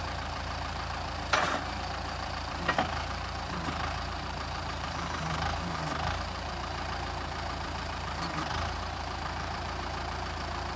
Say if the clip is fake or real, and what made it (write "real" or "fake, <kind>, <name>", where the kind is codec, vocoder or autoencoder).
fake, vocoder, BigVGAN v2